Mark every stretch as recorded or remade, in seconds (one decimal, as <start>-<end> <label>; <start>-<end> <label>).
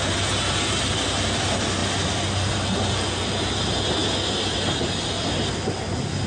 0.0-6.3 recorded